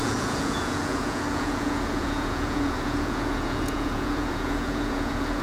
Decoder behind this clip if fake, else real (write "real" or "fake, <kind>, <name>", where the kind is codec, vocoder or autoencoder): fake, vocoder, Vocos